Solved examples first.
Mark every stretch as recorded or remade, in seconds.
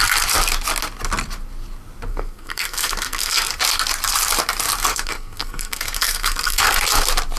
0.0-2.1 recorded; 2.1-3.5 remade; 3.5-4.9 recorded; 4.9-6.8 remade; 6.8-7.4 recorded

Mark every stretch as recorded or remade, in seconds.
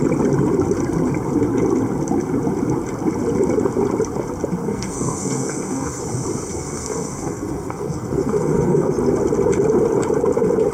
0.0-4.6 recorded; 4.6-6.0 remade; 6.0-6.5 recorded; 6.5-8.9 remade; 8.9-10.7 recorded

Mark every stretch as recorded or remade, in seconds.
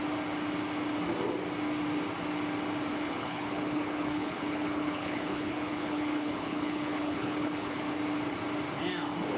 0.0-2.9 recorded; 2.9-7.8 remade; 7.8-9.4 recorded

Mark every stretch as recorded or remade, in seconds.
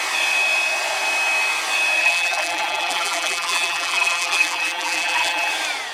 0.0-2.0 recorded; 2.0-5.5 remade; 5.5-5.9 recorded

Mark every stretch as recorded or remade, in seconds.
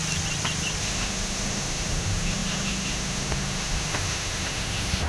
0.0-0.8 recorded; 0.8-5.1 remade